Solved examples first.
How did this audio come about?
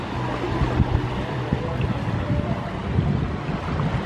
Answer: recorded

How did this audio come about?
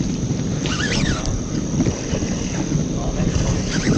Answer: remade